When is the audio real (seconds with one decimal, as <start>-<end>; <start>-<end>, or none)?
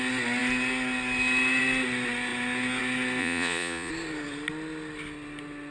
0.0-3.2; 3.9-5.7